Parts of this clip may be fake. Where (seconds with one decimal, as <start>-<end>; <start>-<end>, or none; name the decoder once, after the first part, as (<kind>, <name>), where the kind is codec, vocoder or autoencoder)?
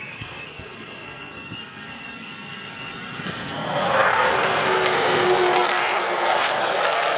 0.0-7.2 (codec, SNAC)